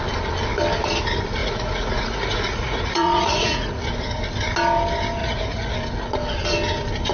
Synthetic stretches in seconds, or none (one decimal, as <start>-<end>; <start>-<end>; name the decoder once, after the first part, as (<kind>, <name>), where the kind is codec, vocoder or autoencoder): 1.4-3.8 (vocoder, Vocos); 5.2-5.7